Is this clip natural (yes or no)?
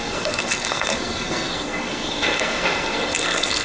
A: no